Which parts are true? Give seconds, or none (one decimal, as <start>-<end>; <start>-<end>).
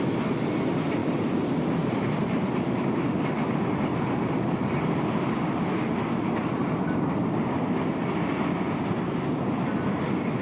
0.0-1.0; 1.5-10.4